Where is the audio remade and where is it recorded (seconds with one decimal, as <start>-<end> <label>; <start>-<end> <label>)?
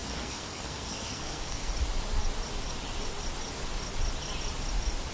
0.0-1.7 remade; 1.7-5.1 recorded